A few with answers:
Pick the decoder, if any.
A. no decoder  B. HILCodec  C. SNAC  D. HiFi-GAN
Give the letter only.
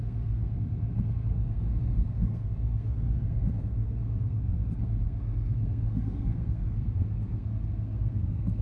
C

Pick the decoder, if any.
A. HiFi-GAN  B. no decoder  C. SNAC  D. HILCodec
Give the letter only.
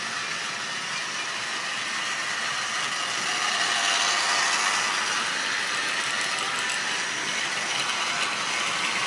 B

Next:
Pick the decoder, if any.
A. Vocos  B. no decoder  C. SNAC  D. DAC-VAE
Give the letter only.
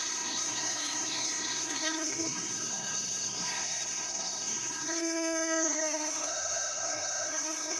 C